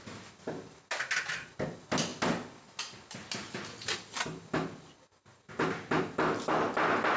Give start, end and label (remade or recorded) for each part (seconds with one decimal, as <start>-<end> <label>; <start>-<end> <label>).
0.0-7.2 recorded